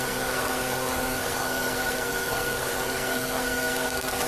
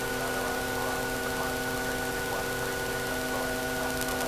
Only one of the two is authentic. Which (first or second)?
second